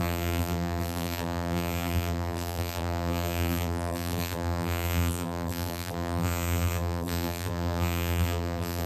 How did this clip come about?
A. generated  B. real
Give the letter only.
A